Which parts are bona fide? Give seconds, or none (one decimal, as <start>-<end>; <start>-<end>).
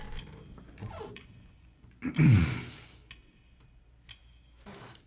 0.0-0.8; 3.0-5.1